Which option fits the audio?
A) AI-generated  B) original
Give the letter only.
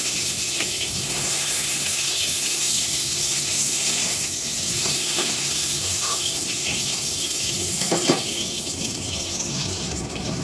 A